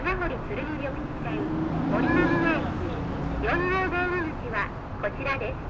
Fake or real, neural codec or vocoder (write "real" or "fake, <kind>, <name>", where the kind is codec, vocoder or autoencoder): real